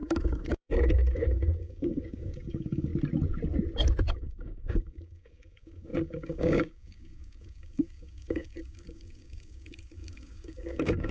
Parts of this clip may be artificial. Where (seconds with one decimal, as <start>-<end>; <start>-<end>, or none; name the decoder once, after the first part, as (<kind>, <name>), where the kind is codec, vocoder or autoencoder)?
0.0-2.9 (codec, DAC); 4.1-11.1